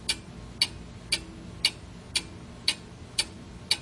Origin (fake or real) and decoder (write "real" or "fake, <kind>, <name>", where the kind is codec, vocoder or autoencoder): real